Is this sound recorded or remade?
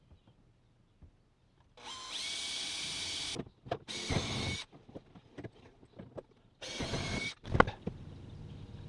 recorded